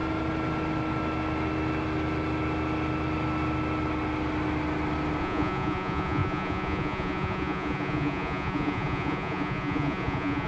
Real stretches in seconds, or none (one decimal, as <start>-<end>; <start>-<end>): 0.0-5.2